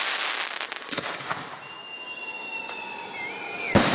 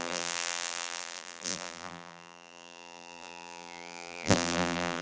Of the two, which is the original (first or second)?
first